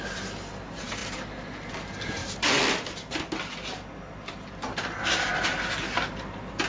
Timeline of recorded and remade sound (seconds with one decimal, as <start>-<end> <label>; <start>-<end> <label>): 0.0-6.7 recorded